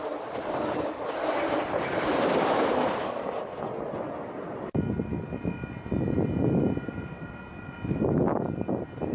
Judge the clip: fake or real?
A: real